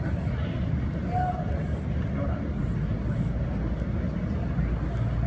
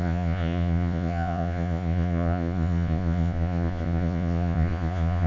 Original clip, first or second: first